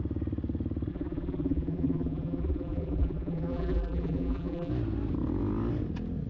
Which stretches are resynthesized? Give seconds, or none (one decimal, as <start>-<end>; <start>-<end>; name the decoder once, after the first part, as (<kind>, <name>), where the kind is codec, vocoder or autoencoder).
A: 0.9-4.7 (vocoder, BigVGAN v2)